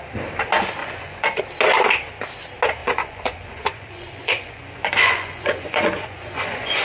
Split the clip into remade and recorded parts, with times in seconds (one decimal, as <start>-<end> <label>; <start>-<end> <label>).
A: 0.0-0.8 recorded; 0.8-1.4 remade; 1.4-2.8 recorded; 2.8-6.8 remade